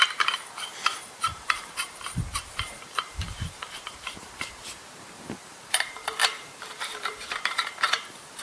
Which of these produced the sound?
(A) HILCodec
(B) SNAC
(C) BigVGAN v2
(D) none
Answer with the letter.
C